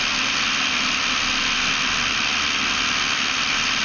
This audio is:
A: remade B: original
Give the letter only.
B